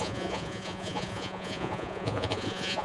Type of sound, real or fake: fake